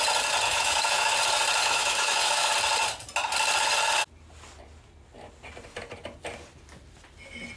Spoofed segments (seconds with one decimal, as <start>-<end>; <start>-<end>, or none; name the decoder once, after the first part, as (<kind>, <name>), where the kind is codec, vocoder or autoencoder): 0.5-1.1 (autoencoder, DAC-VAE); 1.6-2.5